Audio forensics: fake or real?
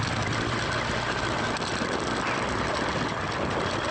real